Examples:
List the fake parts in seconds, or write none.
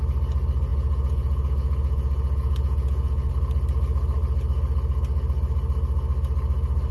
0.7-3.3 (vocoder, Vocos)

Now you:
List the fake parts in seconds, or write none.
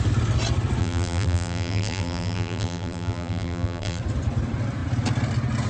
0.8-4.0 (vocoder, BigVGAN v2)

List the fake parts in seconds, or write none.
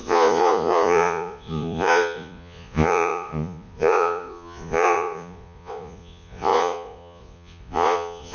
0.0-8.3 (vocoder, Vocos)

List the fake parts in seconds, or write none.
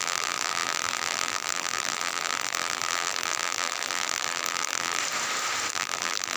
0.0-5.0 (vocoder, BigVGAN v2); 5.7-6.4